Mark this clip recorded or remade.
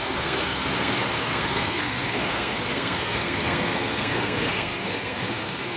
remade